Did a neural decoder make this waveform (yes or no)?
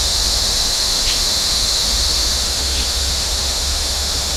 yes